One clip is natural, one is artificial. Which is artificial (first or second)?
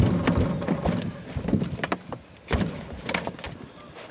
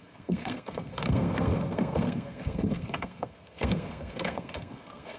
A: second